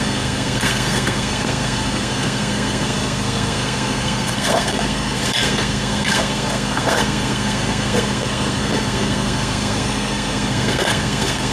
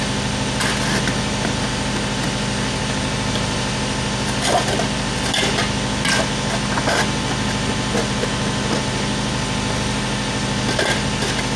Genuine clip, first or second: second